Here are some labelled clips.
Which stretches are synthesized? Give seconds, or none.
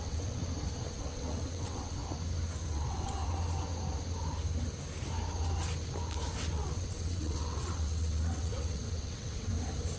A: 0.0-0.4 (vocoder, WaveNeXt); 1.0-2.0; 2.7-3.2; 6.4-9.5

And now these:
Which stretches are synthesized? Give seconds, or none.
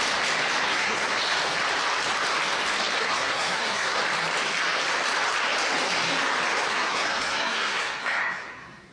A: 0.7-1.2 (codec, SNAC); 3.0-4.0; 6.7-8.9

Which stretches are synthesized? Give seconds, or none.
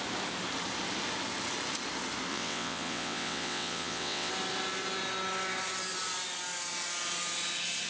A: 2.3-4.3 (vocoder, WaveNeXt)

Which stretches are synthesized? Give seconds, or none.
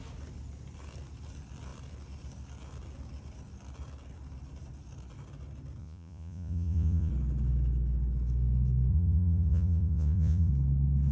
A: 5.8-7.1 (vocoder, Vocos); 8.9-10.5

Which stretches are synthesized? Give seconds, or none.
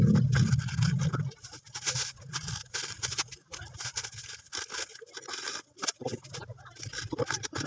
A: none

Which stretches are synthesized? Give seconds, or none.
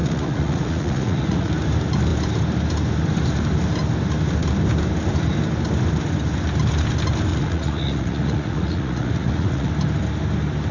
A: 0.0-1.5 (vocoder, Vocos); 7.3-9.7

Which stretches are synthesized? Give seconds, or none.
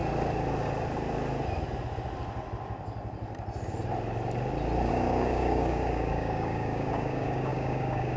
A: 4.9-8.2 (codec, DAC)